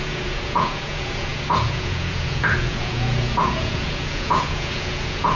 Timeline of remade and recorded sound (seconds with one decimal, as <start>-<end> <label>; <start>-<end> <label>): 0.0-5.4 remade